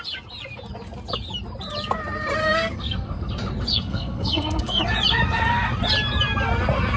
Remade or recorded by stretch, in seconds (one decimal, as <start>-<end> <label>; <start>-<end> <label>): 0.0-2.4 recorded; 2.4-3.3 remade; 3.3-3.7 recorded; 3.7-4.8 remade; 4.8-7.0 recorded